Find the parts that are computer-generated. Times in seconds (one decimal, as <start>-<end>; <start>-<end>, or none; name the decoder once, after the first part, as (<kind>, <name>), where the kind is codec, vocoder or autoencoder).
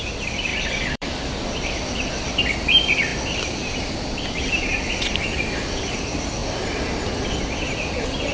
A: 0.5-1.1 (vocoder, BigVGAN v2)